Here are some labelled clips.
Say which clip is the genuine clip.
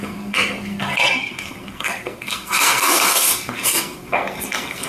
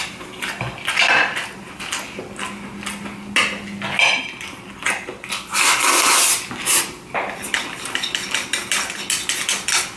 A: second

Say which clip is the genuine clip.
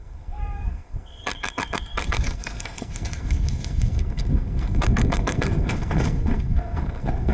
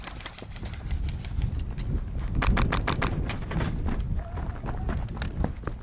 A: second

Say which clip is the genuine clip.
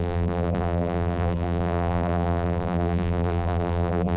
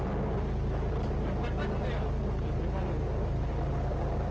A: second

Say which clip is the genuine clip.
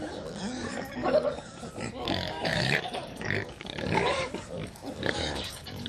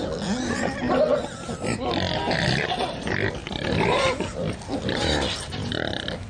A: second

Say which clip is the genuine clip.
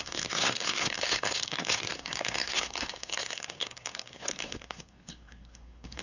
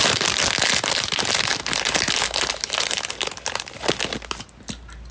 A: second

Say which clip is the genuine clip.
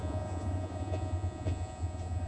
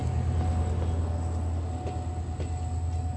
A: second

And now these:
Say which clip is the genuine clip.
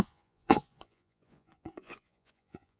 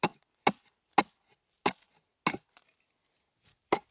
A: second